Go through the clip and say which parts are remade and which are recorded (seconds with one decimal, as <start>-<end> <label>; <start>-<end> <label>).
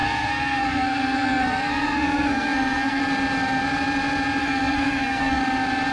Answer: 0.0-3.0 remade; 3.0-4.4 recorded; 4.4-5.4 remade; 5.4-5.9 recorded